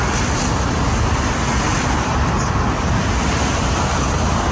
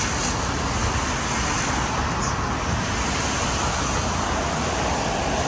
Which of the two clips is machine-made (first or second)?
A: first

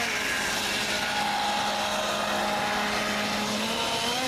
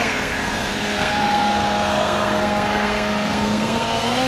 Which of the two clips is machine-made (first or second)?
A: second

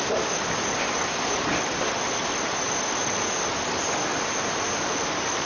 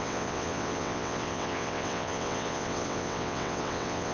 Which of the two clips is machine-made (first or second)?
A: second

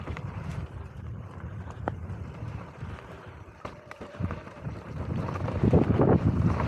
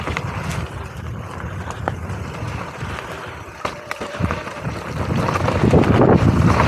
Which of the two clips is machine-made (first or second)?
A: first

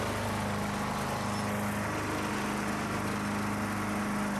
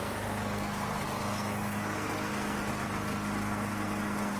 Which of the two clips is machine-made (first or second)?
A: second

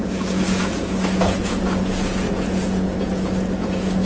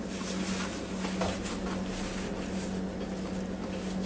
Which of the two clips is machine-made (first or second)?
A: first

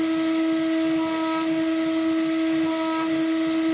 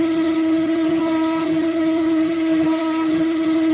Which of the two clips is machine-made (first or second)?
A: second